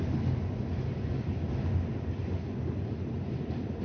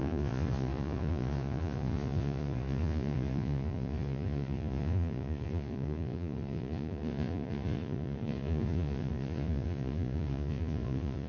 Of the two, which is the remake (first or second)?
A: second